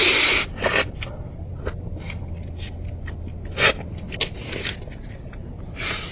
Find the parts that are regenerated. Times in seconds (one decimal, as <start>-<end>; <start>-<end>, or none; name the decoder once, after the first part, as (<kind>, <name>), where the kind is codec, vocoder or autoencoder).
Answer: none